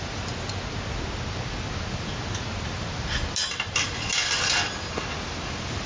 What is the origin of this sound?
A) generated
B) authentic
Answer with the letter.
B